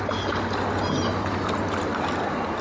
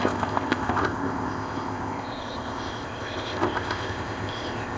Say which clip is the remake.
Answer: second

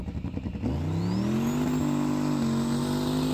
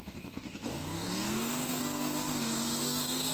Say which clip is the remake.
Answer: second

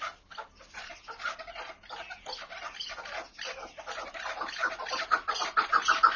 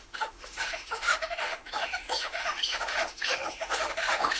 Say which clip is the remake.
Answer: second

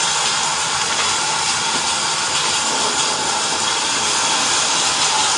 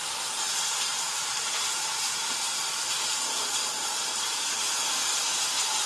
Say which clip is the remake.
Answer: second